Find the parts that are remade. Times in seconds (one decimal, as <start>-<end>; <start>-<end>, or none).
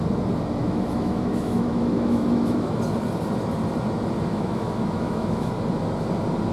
0.6-2.8; 4.3-5.5